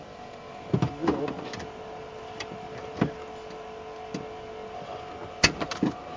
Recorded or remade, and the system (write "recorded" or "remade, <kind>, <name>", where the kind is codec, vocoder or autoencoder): recorded